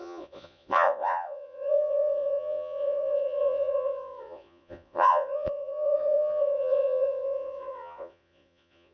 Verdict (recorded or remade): remade